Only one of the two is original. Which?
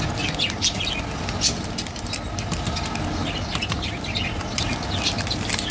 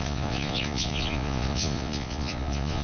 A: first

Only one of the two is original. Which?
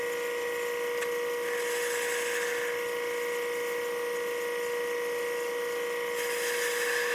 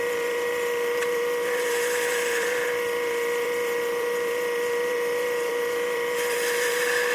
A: first